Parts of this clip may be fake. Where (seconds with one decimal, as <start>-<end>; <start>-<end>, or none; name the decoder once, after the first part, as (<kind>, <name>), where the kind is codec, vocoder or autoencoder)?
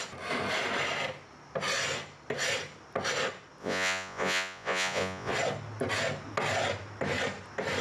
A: 3.6-5.3 (vocoder, Vocos)